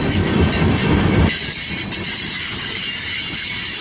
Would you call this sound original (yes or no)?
yes